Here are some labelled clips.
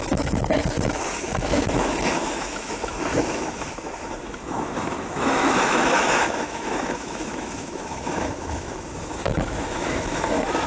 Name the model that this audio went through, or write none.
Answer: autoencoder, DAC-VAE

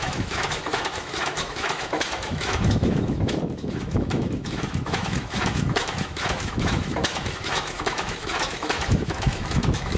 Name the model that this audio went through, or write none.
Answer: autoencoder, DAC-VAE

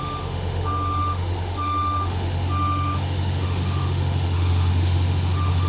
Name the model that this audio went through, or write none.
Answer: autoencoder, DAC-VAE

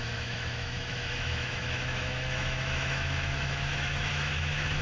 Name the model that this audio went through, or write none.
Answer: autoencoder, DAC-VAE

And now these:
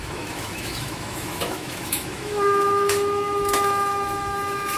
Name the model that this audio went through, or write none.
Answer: autoencoder, DAC-VAE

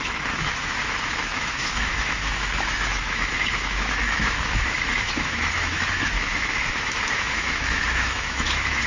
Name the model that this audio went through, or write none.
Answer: autoencoder, DAC-VAE